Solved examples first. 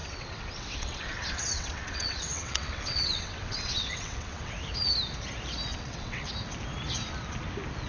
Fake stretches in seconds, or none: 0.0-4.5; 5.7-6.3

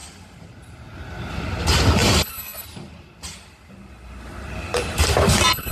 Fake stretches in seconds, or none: none

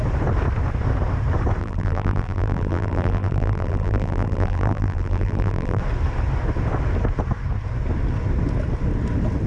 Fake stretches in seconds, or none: 1.6-5.8